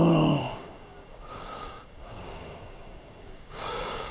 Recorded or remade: remade